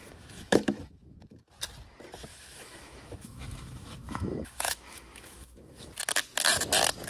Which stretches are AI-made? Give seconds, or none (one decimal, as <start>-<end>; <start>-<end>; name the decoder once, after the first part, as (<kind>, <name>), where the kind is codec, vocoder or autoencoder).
0.0-1.5 (autoencoder, DAC-VAE); 2.3-5.9